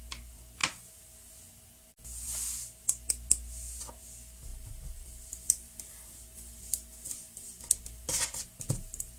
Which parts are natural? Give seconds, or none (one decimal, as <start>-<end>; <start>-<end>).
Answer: 0.0-4.5; 8.5-9.2